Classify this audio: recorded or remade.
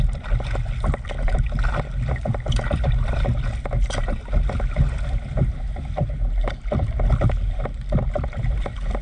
recorded